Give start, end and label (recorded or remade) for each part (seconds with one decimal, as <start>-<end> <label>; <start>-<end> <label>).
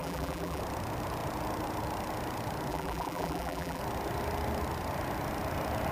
0.0-0.6 remade; 0.6-2.7 recorded; 2.7-3.8 remade; 3.8-5.9 recorded